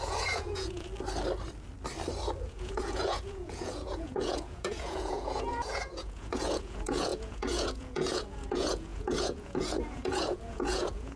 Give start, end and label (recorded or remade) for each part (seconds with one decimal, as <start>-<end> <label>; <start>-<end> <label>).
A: 0.0-0.9 remade; 0.9-2.4 recorded; 2.4-11.2 remade